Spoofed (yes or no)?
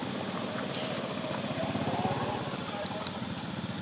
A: no